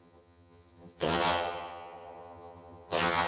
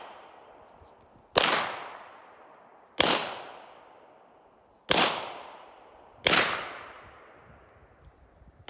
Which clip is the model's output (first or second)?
first